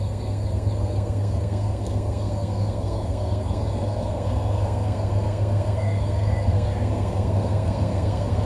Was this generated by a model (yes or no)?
yes